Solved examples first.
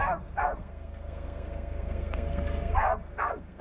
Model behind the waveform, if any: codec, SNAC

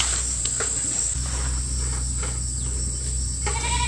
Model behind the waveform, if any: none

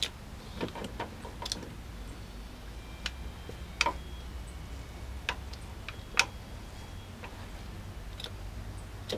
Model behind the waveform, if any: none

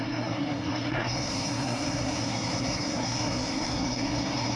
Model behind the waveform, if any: codec, SNAC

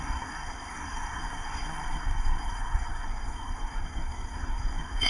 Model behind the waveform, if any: codec, SNAC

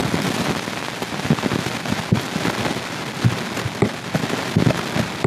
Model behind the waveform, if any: none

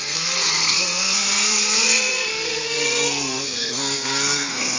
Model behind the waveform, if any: codec, SNAC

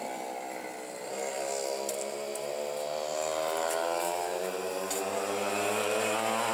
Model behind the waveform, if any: none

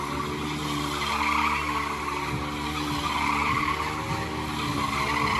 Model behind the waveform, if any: none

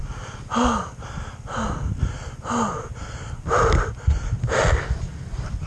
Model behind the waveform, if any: none